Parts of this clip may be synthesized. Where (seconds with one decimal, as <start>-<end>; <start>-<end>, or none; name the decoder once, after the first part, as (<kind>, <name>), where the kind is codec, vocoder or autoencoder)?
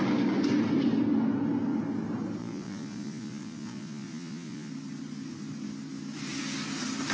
2.4-4.7 (vocoder, Vocos)